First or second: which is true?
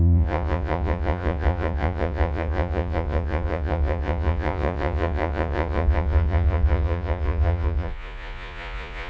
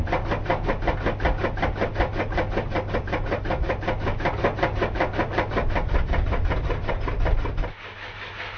second